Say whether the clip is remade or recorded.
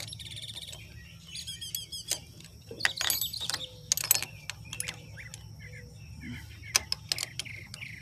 recorded